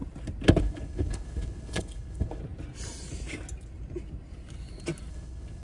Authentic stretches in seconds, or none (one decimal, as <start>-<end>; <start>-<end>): 0.0-0.6; 2.4-5.1